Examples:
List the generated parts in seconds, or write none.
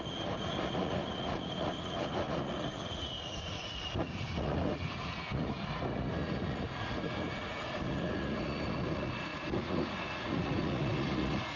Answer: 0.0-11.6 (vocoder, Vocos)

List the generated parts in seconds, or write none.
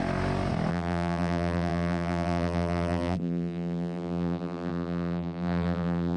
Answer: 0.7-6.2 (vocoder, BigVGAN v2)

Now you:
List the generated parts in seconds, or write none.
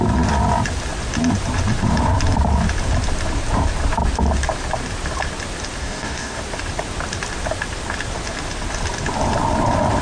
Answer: 5.8-6.4 (codec, DAC)